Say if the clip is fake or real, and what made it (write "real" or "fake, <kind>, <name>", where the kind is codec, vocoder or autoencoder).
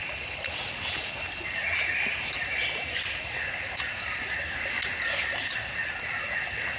real